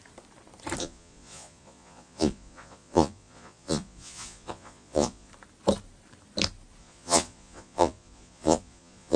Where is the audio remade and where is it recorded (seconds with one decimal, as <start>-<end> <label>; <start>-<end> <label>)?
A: 0.0-0.8 recorded; 0.8-5.3 remade; 5.3-6.8 recorded; 6.8-9.2 remade